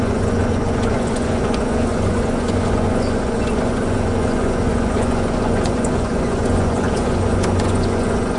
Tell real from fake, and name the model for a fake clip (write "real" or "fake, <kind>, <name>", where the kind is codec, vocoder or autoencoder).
fake, vocoder, Vocos